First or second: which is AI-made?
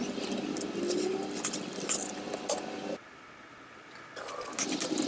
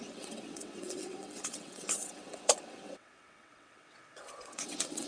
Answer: second